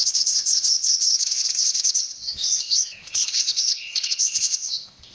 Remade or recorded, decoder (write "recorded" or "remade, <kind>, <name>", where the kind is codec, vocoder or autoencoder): remade, codec, ZipCodec